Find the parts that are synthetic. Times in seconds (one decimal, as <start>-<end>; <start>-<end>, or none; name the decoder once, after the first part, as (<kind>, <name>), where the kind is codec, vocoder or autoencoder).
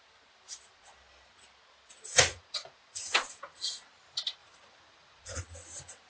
2.3-3.0 (vocoder, Vocos); 4.4-5.4